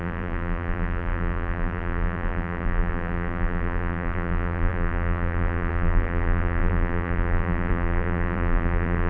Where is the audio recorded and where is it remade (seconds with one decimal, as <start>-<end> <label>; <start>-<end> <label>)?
0.0-9.1 remade